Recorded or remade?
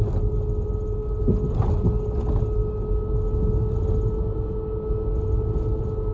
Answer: recorded